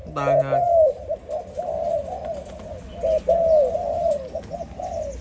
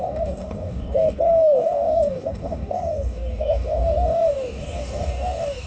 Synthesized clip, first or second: second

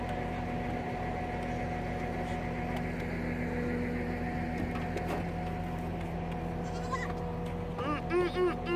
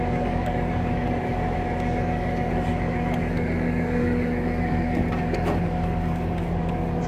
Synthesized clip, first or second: second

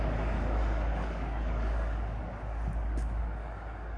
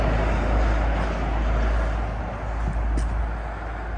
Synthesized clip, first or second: first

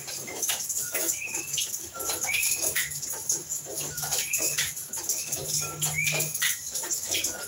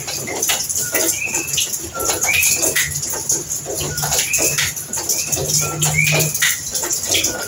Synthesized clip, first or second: first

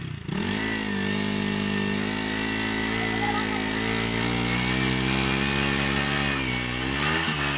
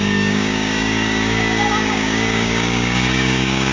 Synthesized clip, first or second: second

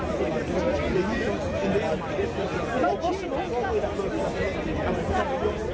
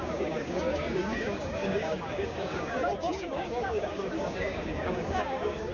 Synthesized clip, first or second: second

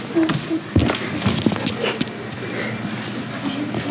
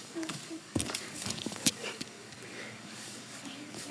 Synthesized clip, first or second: second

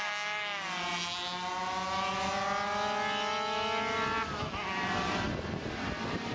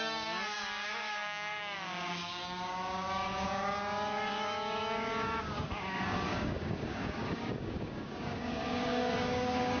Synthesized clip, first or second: second